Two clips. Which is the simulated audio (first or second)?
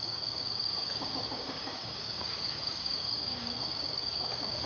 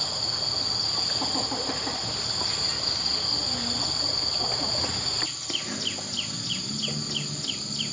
first